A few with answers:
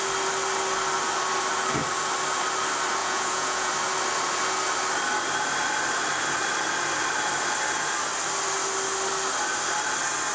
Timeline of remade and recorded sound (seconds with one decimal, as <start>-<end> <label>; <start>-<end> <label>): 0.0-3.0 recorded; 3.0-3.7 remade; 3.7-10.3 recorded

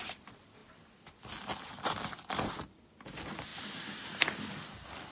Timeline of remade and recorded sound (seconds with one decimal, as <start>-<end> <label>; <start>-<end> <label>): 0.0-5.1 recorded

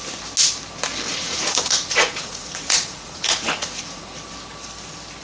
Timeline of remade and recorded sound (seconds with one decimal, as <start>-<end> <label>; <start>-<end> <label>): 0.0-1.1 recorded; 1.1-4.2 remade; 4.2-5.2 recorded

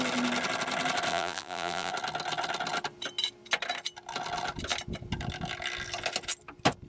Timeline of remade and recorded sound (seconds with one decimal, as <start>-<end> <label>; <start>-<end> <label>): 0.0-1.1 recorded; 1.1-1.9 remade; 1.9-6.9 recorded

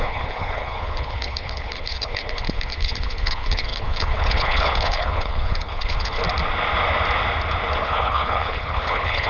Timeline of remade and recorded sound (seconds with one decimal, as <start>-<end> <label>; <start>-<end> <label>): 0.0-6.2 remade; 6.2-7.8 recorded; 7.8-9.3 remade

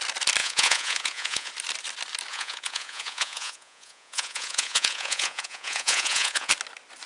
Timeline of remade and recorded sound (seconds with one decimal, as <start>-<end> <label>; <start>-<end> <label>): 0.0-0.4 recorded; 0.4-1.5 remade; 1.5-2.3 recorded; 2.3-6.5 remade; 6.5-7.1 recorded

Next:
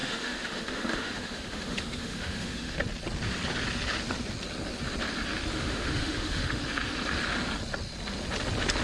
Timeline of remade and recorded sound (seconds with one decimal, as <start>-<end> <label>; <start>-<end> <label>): 0.0-2.8 remade; 2.8-5.5 recorded; 5.5-6.6 remade; 6.6-8.8 recorded

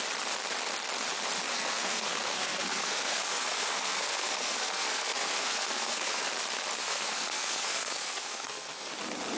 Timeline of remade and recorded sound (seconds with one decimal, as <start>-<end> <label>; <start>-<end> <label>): 0.0-1.5 recorded; 1.5-6.3 remade; 6.3-6.8 recorded; 6.8-8.9 remade; 8.9-9.4 recorded